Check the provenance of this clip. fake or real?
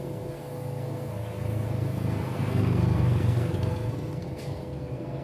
fake